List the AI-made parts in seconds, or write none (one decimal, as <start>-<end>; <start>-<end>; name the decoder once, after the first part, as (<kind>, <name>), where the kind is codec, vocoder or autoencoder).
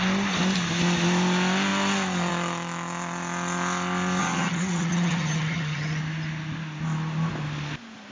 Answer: 4.2-6.0 (vocoder, HiFi-GAN)